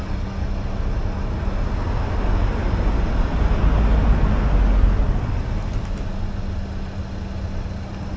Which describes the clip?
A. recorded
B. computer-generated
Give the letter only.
A